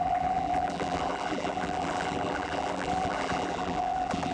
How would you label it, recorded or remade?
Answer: remade